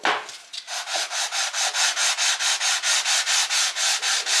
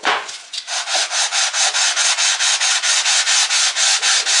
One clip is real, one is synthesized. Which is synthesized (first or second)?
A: second